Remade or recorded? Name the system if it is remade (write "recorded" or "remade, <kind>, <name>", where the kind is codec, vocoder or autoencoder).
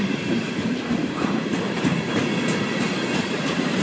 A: remade, vocoder, BigVGAN v2